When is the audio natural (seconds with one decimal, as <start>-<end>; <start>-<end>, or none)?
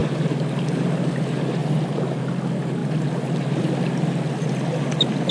0.0-5.3